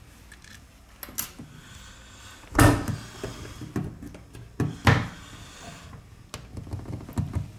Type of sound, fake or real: real